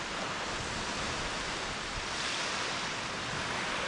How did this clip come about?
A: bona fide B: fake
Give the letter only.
A